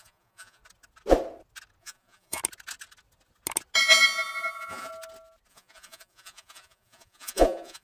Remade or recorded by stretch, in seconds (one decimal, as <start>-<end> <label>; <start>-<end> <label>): 0.0-0.6 remade; 0.6-1.8 recorded; 1.8-2.4 remade; 2.4-3.8 recorded; 3.8-4.9 remade; 4.9-5.5 recorded; 5.5-7.8 remade